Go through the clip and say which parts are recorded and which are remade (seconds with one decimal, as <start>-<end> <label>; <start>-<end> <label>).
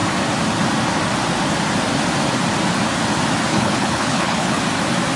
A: 0.0-3.5 recorded; 3.5-4.6 remade; 4.6-5.2 recorded